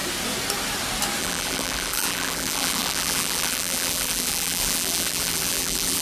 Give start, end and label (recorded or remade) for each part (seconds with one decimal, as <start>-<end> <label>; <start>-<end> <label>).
0.0-1.2 recorded; 1.2-6.0 remade